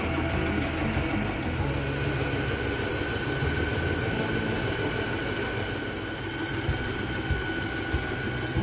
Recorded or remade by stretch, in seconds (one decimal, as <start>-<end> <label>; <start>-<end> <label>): 0.0-8.6 recorded